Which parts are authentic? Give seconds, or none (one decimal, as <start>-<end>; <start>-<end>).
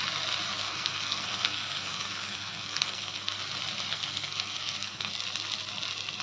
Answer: 0.0-0.5; 3.4-3.9; 5.1-6.2